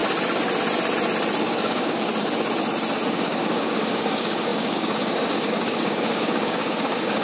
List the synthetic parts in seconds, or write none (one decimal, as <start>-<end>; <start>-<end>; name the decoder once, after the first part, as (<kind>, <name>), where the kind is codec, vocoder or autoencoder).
1.4-2.1 (codec, DAC); 3.1-7.2